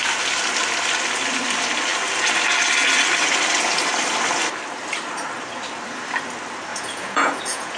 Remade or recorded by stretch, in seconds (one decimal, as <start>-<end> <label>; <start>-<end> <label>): 0.0-6.7 recorded; 6.7-7.8 remade